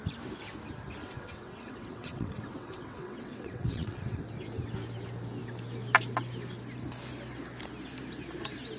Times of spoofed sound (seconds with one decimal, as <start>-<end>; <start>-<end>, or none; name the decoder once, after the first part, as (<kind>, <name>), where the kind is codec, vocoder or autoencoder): 1.0-4.2 (vocoder, WaveNeXt)